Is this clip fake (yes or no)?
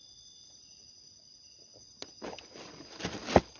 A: no